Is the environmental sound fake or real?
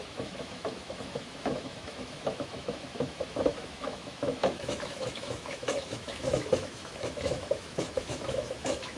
fake